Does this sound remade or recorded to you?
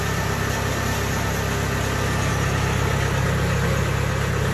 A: recorded